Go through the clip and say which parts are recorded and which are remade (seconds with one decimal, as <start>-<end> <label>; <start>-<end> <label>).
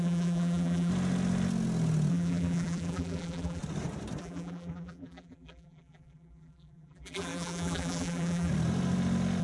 0.0-0.9 remade; 0.9-2.1 recorded; 2.1-3.6 remade; 3.6-4.2 recorded; 4.2-8.5 remade; 8.5-9.4 recorded